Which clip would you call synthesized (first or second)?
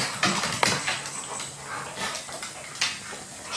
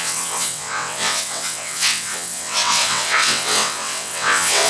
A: second